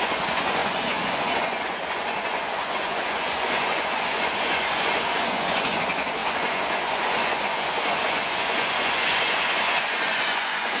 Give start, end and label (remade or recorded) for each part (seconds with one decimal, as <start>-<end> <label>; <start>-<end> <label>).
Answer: 0.0-10.8 remade